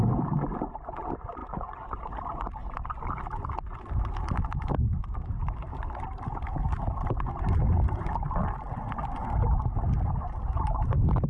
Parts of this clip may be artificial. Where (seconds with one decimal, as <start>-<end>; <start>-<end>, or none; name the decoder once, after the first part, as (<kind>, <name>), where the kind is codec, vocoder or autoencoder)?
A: none